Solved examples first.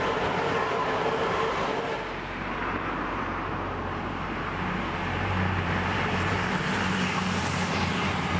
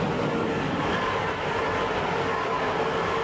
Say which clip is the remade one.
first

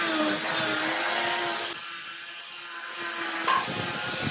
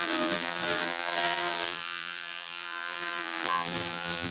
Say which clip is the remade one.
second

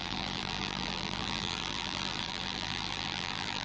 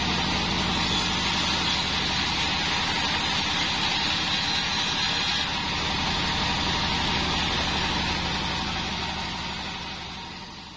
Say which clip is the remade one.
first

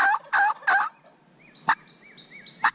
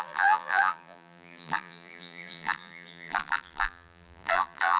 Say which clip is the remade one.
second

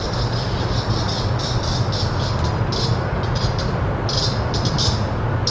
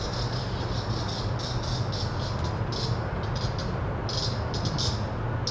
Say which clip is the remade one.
first